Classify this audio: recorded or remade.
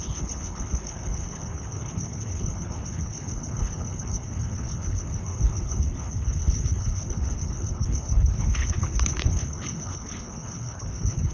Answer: remade